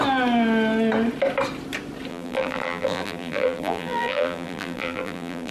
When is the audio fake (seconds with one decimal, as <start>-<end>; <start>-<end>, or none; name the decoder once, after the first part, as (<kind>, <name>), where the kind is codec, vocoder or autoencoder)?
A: 2.1-5.5 (vocoder, BigVGAN v2)